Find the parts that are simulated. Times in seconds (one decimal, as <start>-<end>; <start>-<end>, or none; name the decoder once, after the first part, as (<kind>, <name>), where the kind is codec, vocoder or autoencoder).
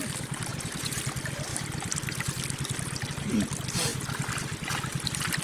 0.5-1.0 (vocoder, Vocos)